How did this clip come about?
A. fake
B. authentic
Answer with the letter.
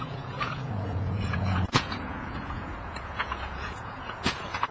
A